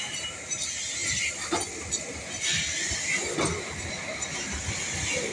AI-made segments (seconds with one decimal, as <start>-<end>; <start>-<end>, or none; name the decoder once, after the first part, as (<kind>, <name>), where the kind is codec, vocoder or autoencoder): none